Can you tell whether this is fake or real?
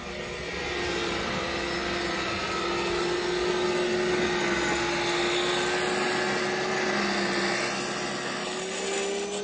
real